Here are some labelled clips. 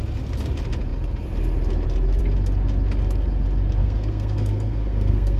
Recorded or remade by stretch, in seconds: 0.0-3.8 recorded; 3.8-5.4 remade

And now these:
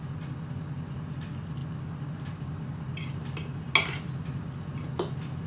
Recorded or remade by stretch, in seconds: 0.0-5.5 recorded

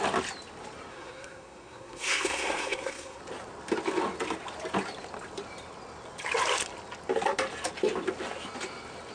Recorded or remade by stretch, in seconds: 0.0-0.9 recorded; 0.9-3.2 remade; 3.2-9.1 recorded

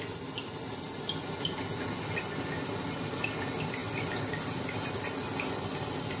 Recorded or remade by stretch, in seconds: 0.0-6.2 recorded